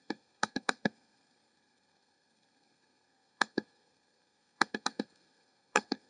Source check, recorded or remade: remade